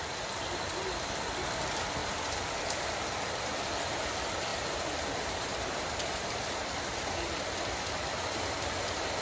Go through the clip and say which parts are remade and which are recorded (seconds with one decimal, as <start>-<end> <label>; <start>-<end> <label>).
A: 0.0-9.2 remade